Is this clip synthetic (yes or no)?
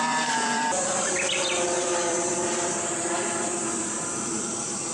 yes